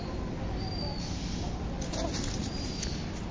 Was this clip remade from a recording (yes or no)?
no